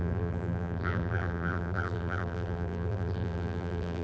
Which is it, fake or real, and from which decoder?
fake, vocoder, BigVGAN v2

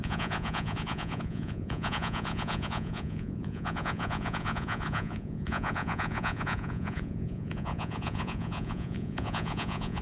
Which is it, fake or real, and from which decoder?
fake, vocoder, Vocos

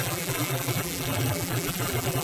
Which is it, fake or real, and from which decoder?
fake, vocoder, BigVGAN v2